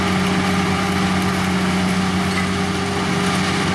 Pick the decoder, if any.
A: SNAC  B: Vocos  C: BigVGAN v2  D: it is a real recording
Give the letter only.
D